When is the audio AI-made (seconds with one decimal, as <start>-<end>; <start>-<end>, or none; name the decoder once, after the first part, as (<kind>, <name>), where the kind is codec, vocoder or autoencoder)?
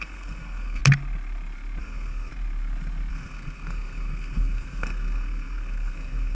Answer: 0.0-0.8 (codec, SNAC); 1.8-2.3; 3.1-6.3